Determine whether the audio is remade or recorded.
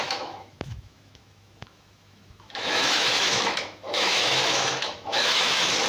remade